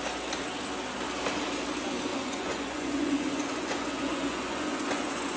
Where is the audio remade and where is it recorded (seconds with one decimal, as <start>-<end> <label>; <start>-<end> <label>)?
0.0-2.1 recorded; 2.1-5.4 remade

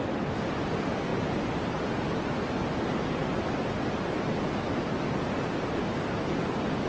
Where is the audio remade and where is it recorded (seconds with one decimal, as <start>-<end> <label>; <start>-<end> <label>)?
0.0-6.9 recorded

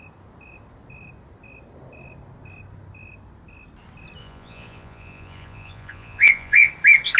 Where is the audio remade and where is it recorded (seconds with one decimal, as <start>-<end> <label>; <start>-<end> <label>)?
0.0-4.2 recorded; 4.2-6.7 remade; 6.7-7.2 recorded

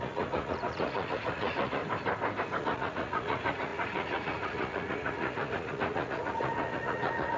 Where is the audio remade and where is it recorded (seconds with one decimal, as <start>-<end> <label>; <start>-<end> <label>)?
0.0-1.8 remade; 1.8-2.6 recorded; 2.6-7.4 remade